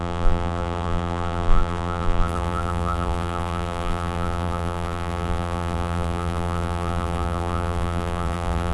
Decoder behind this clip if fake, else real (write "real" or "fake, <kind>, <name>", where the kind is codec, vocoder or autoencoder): fake, vocoder, BigVGAN v2